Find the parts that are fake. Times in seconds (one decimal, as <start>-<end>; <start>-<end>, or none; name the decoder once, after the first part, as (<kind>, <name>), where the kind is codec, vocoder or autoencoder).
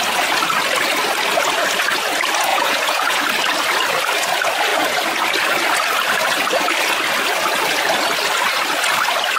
2.5-3.2 (vocoder, Vocos)